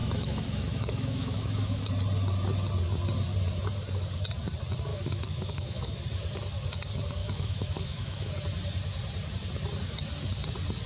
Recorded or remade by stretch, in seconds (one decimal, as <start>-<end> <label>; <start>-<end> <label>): 0.0-1.8 remade; 1.8-4.9 recorded; 4.9-6.0 remade; 6.0-7.2 recorded; 7.2-8.3 remade; 8.3-10.9 recorded

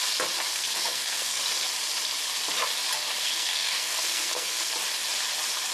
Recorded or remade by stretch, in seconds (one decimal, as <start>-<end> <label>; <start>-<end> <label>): 0.0-0.5 recorded; 0.5-1.4 remade; 1.4-3.2 recorded; 3.2-4.7 remade; 4.7-5.7 recorded